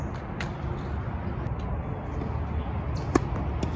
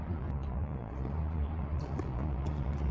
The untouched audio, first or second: first